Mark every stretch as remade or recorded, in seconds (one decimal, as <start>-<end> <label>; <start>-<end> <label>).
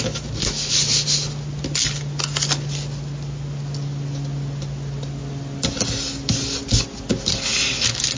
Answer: 0.0-8.2 recorded